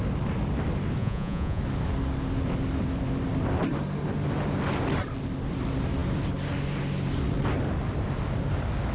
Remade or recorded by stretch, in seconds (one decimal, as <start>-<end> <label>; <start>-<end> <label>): 0.0-1.0 recorded; 1.0-1.6 remade; 1.6-8.9 recorded